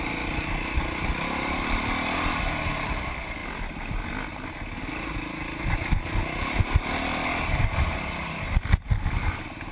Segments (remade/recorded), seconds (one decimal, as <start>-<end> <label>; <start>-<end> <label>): 0.0-9.7 recorded